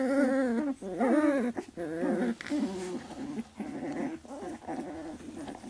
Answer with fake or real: real